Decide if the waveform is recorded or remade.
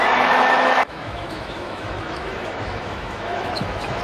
remade